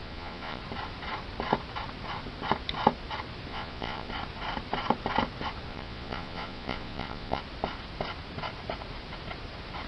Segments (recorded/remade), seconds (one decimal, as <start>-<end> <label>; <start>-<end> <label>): 0.0-0.6 remade; 0.6-3.5 recorded; 3.5-4.1 remade; 4.1-5.7 recorded; 5.7-7.4 remade; 7.4-9.9 recorded